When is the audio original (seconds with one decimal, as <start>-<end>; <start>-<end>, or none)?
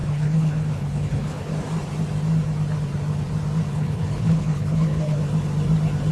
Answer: 1.5-3.7; 5.2-6.1